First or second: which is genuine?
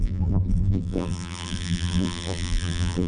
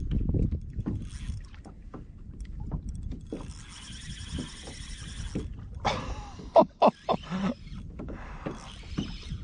second